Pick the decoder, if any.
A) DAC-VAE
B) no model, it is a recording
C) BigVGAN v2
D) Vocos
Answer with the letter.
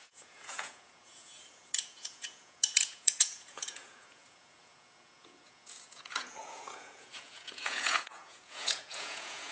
D